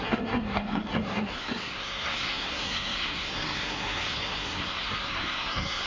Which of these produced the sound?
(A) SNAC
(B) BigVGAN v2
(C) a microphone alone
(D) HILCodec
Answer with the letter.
A